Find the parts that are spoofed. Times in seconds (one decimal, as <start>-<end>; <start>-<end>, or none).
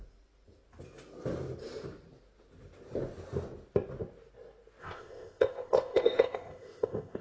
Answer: 4.8-7.2